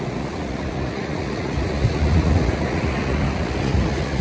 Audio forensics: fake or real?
fake